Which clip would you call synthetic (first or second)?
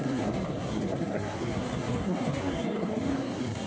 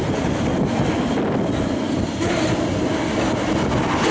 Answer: first